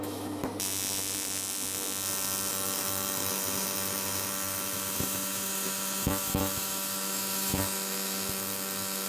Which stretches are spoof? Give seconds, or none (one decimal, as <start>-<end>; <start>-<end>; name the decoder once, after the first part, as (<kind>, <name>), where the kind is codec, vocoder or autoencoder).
0.0-0.4 (autoencoder, DAC-VAE); 2.5-9.1